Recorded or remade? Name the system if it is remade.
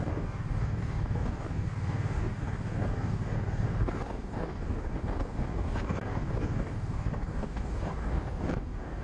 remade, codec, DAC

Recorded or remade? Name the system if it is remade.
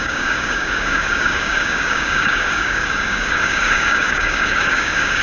remade, codec, DAC